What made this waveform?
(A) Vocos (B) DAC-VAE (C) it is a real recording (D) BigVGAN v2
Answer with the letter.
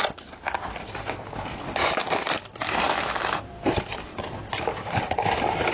D